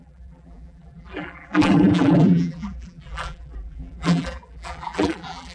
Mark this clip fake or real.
fake